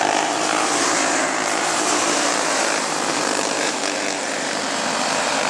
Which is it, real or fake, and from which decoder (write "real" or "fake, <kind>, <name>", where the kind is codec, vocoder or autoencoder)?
fake, vocoder, BigVGAN v2